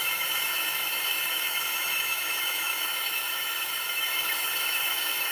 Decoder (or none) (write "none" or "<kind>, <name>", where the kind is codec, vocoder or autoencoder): autoencoder, DAC-VAE